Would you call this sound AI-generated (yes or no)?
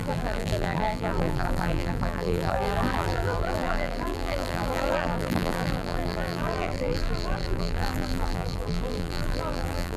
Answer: yes